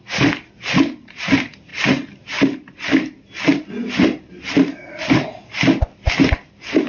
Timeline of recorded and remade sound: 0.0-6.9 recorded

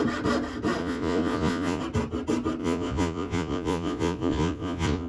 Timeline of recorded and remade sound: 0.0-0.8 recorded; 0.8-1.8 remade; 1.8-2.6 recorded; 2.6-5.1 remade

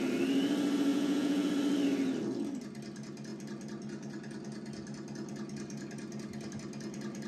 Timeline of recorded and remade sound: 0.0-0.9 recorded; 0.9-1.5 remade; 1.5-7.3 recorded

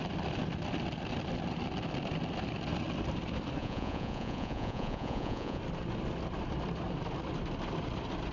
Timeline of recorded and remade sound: 0.0-3.6 recorded; 3.6-5.6 remade; 5.6-8.3 recorded

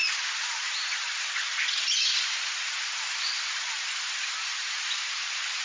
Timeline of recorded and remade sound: 0.0-5.6 recorded

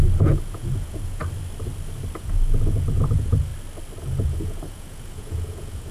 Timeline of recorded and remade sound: 0.0-1.2 remade; 1.2-2.2 recorded; 2.2-3.5 remade; 3.5-4.0 recorded; 4.0-5.9 remade